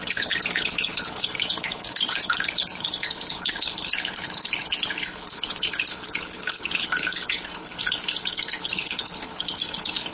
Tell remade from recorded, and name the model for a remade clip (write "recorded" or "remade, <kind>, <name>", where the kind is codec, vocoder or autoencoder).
remade, codec, HILCodec